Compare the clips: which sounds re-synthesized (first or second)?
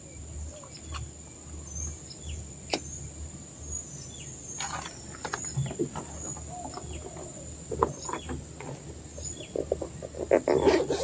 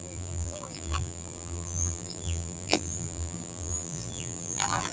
second